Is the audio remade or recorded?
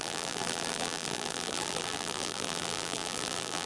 remade